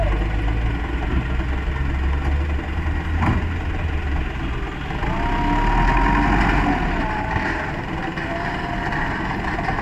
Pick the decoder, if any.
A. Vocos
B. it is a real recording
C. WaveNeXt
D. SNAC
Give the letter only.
B